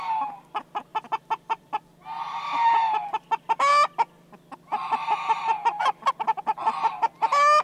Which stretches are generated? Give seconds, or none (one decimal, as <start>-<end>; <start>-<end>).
0.9-1.8